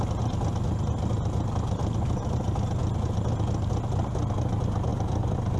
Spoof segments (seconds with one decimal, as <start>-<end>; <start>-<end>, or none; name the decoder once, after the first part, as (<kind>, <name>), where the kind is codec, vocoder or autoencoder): none